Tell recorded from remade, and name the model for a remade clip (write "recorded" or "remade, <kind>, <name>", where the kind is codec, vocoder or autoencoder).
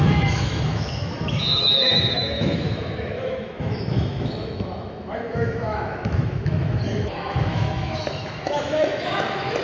remade, autoencoder, DAC-VAE